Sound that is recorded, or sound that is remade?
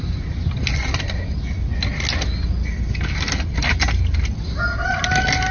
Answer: recorded